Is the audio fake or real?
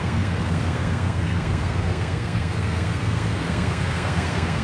fake